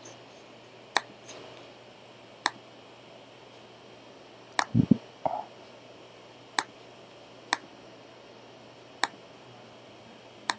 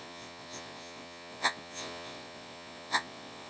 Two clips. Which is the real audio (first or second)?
first